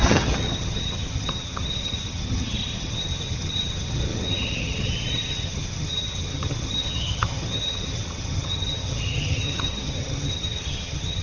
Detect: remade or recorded remade